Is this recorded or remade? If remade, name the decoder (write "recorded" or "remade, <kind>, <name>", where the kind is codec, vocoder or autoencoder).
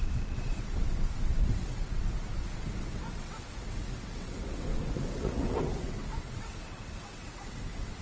remade, vocoder, WaveNeXt